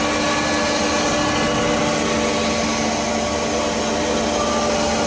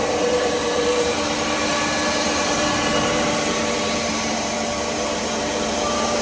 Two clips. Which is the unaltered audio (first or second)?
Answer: first